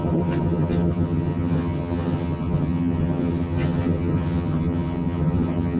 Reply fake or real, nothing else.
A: fake